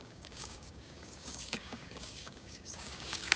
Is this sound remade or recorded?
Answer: remade